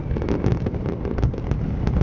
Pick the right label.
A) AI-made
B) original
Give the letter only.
B